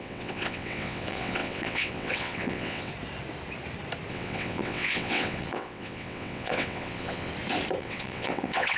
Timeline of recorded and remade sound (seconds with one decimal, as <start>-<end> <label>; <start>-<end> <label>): 0.0-2.9 remade; 2.9-4.1 recorded; 4.1-7.3 remade; 7.3-7.8 recorded; 7.8-8.8 remade